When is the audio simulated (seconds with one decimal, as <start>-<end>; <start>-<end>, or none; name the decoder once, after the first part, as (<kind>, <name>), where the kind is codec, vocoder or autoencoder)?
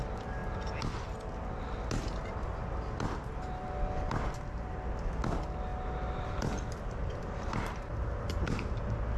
5.7-7.6 (vocoder, BigVGAN v2)